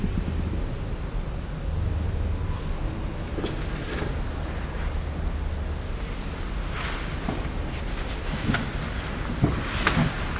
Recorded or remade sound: recorded